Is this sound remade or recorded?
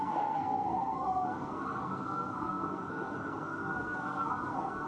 remade